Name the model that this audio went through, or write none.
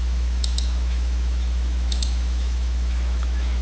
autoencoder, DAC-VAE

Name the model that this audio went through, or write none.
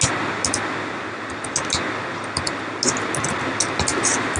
none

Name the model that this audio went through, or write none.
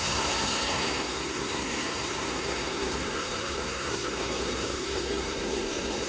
codec, SNAC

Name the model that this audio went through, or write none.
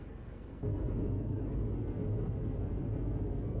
codec, SNAC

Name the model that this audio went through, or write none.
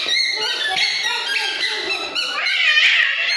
none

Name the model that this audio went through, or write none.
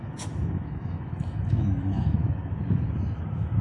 autoencoder, DAC-VAE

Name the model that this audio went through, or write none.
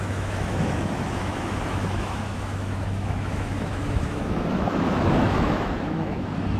autoencoder, DAC-VAE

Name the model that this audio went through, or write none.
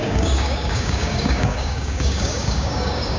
codec, DAC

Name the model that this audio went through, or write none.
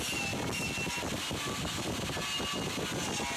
none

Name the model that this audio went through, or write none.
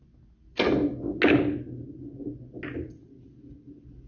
none